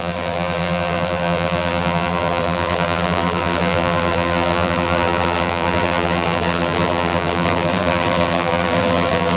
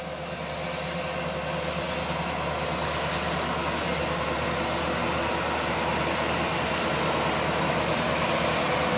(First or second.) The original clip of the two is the second